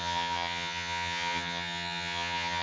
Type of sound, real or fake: fake